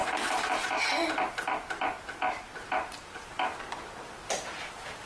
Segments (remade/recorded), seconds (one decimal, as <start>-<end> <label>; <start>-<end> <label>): 0.0-0.8 remade; 0.8-2.5 recorded; 2.5-3.2 remade; 3.2-5.1 recorded